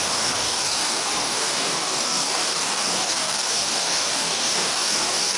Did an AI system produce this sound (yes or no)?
yes